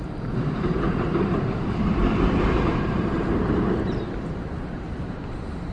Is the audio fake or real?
fake